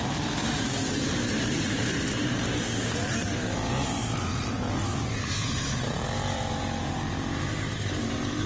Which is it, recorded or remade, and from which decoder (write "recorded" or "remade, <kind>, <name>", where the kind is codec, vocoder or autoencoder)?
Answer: remade, vocoder, BigVGAN v2